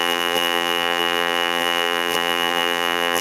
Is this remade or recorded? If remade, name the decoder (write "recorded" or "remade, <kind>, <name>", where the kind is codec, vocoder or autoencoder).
remade, vocoder, BigVGAN v2